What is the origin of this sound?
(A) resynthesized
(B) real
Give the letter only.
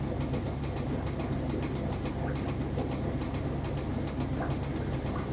B